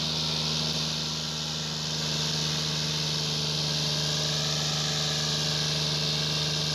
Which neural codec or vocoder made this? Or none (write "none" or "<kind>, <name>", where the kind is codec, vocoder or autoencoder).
none